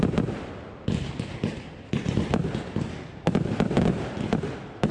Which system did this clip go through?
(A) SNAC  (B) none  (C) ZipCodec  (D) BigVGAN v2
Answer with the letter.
B